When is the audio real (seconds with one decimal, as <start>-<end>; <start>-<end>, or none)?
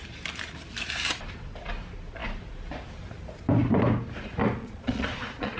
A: 0.0-4.6